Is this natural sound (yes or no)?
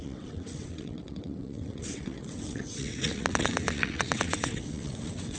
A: no